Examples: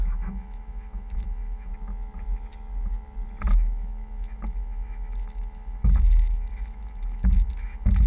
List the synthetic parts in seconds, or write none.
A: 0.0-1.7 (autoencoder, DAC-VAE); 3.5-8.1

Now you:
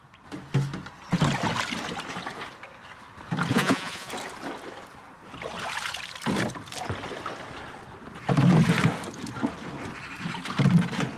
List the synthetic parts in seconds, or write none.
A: 3.5-4.1 (vocoder, Vocos)

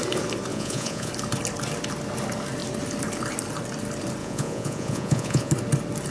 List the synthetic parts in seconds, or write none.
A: 0.5-1.1 (vocoder, Vocos); 4.2-5.5

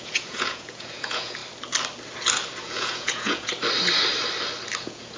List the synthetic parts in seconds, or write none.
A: 0.0-1.4 (vocoder, Vocos); 2.6-3.5; 4.8-5.2

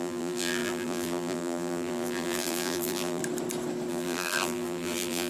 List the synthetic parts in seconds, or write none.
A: 0.0-3.2 (vocoder, BigVGAN v2); 3.9-5.3